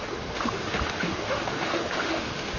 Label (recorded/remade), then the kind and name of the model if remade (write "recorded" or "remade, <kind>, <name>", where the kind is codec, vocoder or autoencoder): remade, autoencoder, DAC-VAE